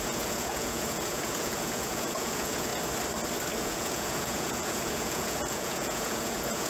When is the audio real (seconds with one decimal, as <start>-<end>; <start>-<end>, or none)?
2.7-3.6